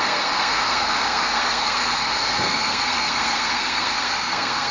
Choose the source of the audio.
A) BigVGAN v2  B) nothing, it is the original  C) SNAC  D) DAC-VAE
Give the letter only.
C